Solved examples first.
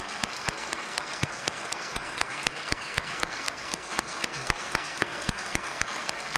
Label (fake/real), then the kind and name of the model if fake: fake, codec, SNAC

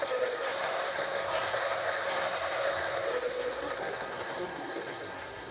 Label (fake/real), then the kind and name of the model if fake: fake, codec, SNAC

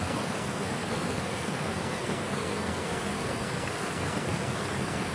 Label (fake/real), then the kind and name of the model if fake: fake, codec, SNAC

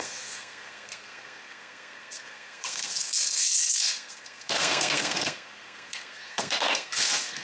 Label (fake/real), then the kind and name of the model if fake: fake, codec, SNAC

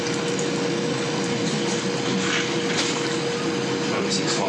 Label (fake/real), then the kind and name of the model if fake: real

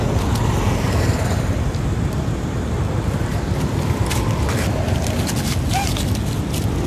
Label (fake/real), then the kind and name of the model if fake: real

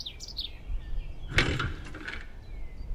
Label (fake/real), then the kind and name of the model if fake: real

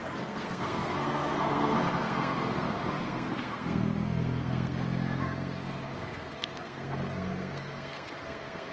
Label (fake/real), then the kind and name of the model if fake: fake, codec, SNAC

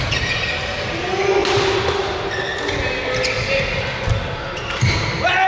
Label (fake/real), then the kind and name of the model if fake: real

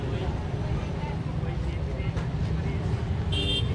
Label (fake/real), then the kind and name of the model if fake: real